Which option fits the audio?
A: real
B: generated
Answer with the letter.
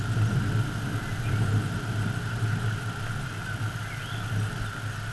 A